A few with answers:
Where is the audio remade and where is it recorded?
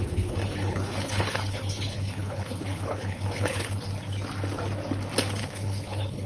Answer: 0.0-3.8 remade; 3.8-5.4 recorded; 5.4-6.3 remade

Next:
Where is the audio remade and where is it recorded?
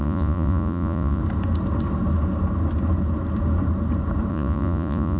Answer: 0.0-1.2 remade; 1.2-4.3 recorded; 4.3-5.2 remade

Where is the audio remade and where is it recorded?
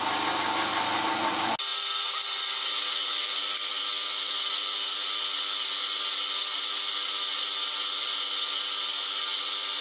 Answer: 0.0-9.8 recorded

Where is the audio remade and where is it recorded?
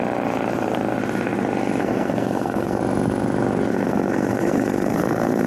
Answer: 0.0-1.8 recorded; 1.8-2.8 remade; 2.8-3.7 recorded; 3.7-5.5 remade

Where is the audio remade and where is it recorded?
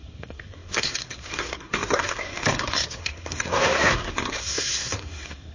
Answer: 0.0-5.5 remade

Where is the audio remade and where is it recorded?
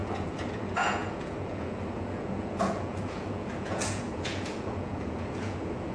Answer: 0.0-5.9 remade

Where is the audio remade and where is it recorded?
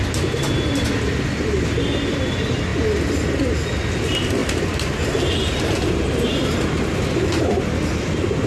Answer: 0.0-8.5 recorded